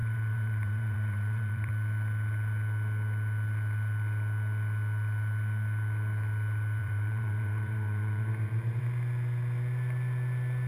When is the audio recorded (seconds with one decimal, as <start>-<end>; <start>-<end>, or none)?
1.7-6.8; 8.8-10.7